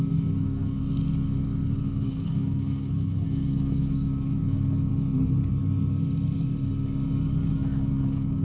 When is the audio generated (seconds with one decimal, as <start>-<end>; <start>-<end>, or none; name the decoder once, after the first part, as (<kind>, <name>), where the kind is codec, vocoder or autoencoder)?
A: 0.0-0.8 (codec, DAC); 1.8-4.9; 7.5-8.4